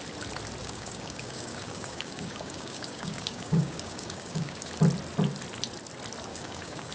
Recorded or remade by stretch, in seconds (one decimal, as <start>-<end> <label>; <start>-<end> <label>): 0.0-0.6 recorded; 0.6-4.7 remade; 4.7-6.3 recorded; 6.3-6.9 remade